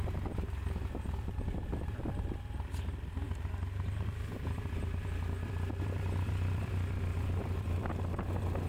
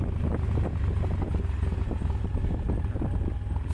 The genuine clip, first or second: second